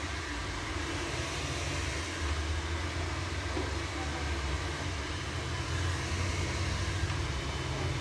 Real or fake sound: real